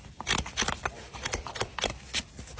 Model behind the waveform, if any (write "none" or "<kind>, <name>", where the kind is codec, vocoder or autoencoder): none